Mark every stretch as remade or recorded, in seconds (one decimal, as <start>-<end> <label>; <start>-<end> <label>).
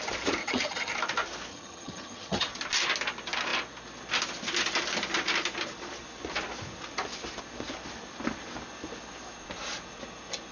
0.0-0.4 recorded; 0.4-0.9 remade; 0.9-1.5 recorded; 1.5-2.5 remade; 2.5-10.5 recorded